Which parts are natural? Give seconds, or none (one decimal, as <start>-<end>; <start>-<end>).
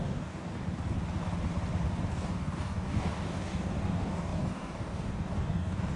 0.5-2.1